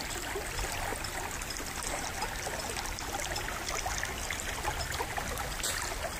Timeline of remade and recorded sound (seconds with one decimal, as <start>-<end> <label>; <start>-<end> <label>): 0.0-6.2 recorded